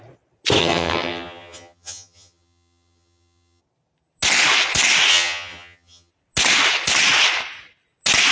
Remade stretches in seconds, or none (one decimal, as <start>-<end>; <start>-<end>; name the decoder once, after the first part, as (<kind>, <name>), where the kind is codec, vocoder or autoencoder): 0.6-3.6 (vocoder, HiFi-GAN); 5.1-6.1